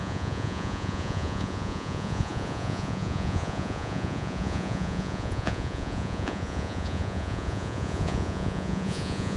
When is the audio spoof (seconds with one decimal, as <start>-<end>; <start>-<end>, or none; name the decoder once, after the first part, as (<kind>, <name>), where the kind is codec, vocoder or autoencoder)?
0.0-9.4 (vocoder, Vocos)